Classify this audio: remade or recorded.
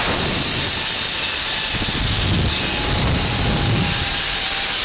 recorded